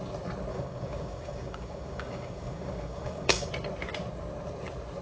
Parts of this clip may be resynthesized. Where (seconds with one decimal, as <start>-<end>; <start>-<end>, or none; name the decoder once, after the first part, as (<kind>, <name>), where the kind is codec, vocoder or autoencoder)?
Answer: 0.5-3.5 (codec, DAC)